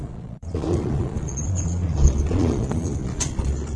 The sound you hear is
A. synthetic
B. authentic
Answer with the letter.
A